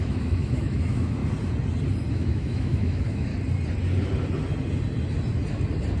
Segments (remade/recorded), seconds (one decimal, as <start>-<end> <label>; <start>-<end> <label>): 0.0-1.2 remade; 1.2-2.1 recorded; 2.1-3.3 remade; 3.3-6.0 recorded